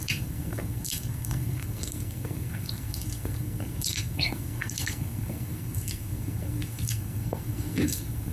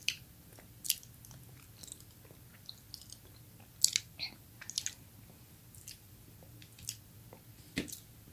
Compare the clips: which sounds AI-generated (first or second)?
first